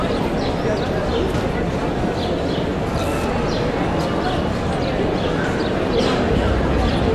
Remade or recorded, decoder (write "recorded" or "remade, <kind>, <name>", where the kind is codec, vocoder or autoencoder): recorded